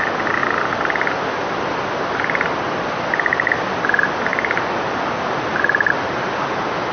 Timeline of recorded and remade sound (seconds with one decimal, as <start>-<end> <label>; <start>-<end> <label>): 0.0-6.9 recorded